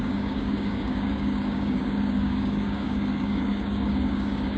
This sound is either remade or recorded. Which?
remade